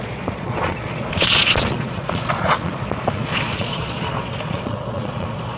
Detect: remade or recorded remade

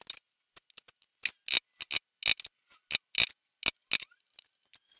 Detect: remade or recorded recorded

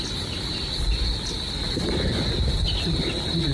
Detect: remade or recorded recorded